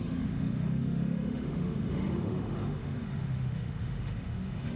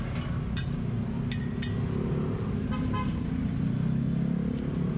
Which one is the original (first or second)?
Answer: second